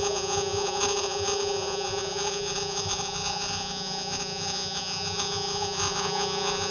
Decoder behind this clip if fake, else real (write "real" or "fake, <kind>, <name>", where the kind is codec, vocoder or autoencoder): fake, vocoder, Vocos